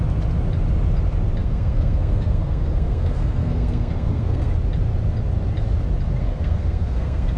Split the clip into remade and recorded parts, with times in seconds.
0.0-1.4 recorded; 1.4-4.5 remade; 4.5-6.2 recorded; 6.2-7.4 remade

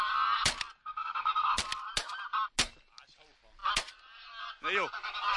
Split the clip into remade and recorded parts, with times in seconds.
0.0-0.8 recorded; 0.8-1.6 remade; 1.6-5.4 recorded

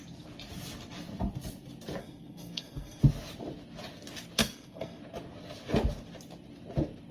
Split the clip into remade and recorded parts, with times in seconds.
0.0-2.0 recorded; 2.0-3.0 remade; 3.0-4.4 recorded; 4.4-5.0 remade; 5.0-7.1 recorded

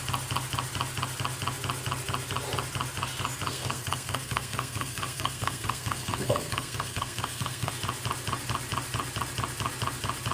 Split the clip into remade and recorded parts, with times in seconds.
0.0-3.5 recorded; 3.5-7.7 remade; 7.7-10.3 recorded

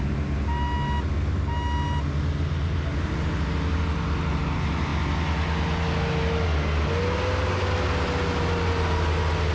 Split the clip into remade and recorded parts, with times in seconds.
0.0-9.5 recorded